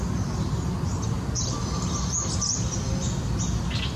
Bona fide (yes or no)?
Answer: yes